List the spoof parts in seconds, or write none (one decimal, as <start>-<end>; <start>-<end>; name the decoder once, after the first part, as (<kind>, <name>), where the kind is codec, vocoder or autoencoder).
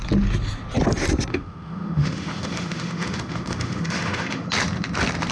1.3-4.5 (autoencoder, DAC-VAE)